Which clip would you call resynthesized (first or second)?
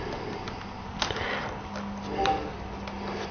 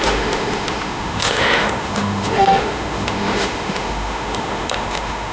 second